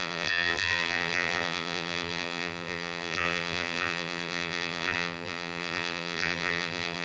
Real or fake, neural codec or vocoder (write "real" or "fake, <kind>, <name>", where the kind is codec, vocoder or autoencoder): fake, vocoder, BigVGAN v2